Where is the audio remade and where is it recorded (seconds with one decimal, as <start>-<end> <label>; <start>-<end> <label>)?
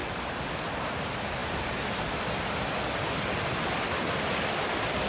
0.0-5.1 recorded